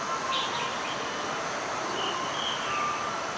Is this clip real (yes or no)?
yes